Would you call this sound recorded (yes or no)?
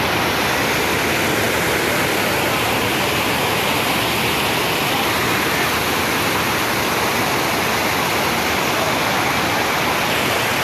yes